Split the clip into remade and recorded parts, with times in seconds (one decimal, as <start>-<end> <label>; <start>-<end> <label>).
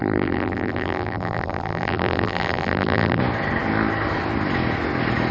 0.0-3.2 remade; 3.2-5.3 recorded